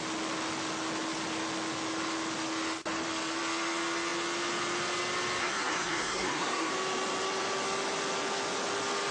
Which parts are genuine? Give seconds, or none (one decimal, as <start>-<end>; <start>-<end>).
0.0-5.4; 6.7-9.1